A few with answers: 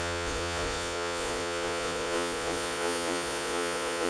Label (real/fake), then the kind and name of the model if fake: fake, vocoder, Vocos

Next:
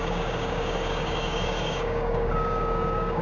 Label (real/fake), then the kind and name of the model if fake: fake, codec, DAC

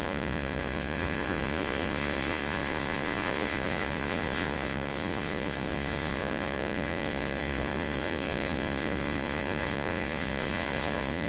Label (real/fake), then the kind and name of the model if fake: fake, vocoder, Vocos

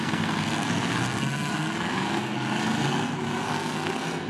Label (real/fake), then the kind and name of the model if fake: fake, codec, SNAC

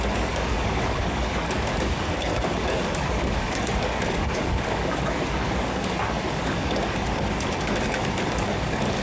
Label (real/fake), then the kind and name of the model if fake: fake, codec, DAC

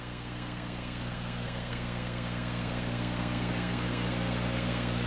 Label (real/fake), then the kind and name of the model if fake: fake, codec, SNAC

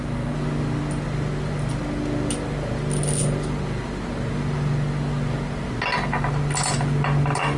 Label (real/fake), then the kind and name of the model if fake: real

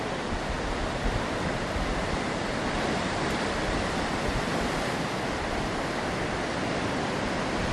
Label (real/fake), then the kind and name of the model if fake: fake, vocoder, BigVGAN v2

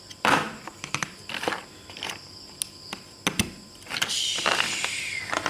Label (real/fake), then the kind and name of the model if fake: real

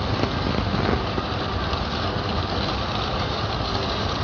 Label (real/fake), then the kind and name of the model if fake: real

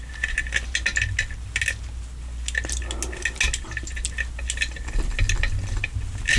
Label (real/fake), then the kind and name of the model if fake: real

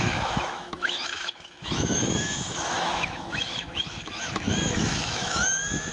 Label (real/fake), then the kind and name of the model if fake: fake, autoencoder, DAC-VAE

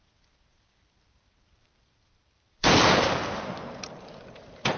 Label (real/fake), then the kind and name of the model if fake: fake, vocoder, BigVGAN v2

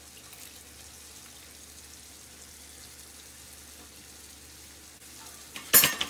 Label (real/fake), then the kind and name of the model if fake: real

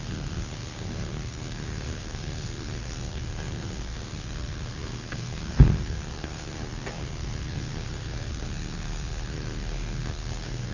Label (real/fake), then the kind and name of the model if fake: fake, codec, SNAC